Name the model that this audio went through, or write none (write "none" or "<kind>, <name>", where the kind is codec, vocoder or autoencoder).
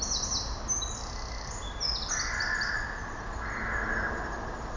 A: none